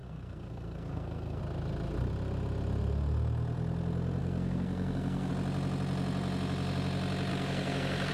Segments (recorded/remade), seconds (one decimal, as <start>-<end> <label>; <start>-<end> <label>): 0.0-1.4 remade; 1.4-4.2 recorded; 4.2-5.3 remade; 5.3-7.3 recorded; 7.3-8.1 remade

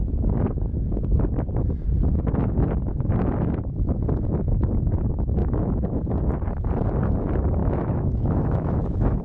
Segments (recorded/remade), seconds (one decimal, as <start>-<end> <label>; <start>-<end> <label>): 0.0-5.4 recorded; 5.4-6.0 remade; 6.0-7.6 recorded; 7.6-9.2 remade

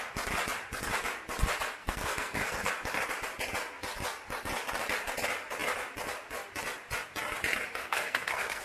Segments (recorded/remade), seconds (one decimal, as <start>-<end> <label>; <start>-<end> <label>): 0.0-1.8 recorded; 1.8-2.7 remade; 2.7-7.8 recorded; 7.8-8.6 remade

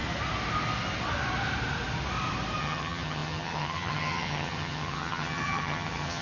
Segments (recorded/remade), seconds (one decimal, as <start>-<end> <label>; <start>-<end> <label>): 0.0-2.6 recorded; 2.6-6.2 remade

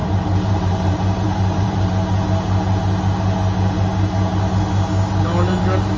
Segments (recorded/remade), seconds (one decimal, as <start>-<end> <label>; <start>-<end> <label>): 0.0-1.9 remade; 1.9-6.0 recorded